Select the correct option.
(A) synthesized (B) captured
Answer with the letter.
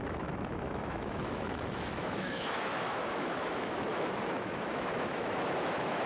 A